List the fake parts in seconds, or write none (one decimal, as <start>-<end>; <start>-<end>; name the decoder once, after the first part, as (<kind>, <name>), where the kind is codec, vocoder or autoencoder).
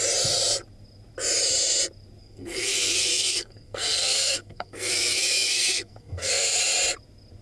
2.2-6.6 (codec, SNAC)